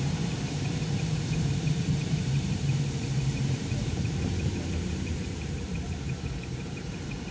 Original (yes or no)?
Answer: no